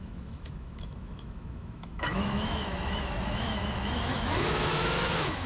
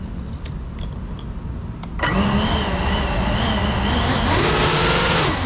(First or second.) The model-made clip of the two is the first